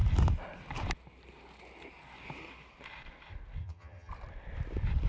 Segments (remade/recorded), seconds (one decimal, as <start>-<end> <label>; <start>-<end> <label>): 0.0-3.6 recorded; 3.6-4.1 remade; 4.1-5.1 recorded